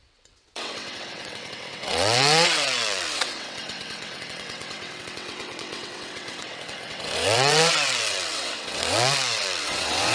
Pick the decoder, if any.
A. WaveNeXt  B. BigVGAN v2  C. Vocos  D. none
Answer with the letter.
A